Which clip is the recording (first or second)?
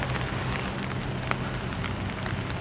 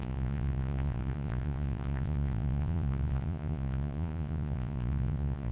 first